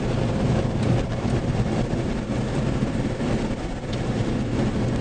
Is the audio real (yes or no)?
yes